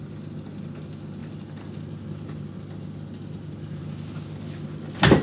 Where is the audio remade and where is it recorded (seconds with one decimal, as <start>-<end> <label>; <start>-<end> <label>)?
0.0-5.2 recorded